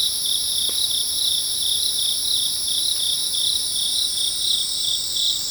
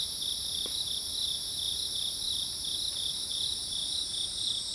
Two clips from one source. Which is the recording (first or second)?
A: first